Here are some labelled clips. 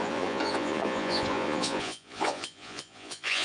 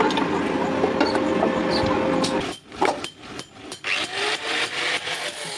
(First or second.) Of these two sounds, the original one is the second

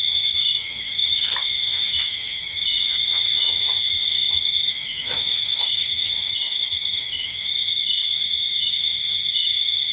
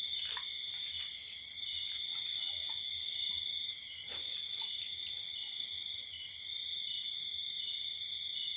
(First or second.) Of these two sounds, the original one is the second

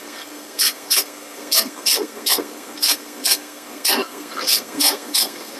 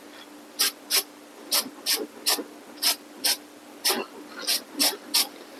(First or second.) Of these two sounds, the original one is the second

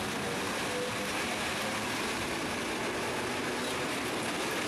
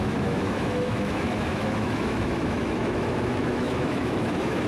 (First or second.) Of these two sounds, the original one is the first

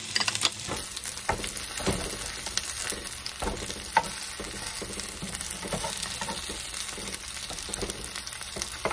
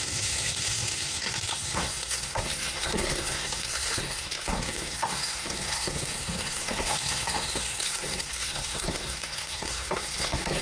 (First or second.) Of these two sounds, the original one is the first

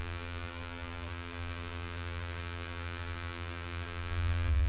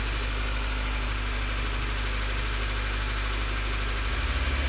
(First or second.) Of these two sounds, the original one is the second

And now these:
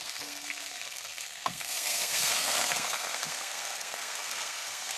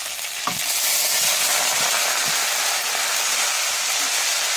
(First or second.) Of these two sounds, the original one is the second